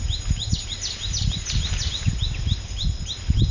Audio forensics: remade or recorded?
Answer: recorded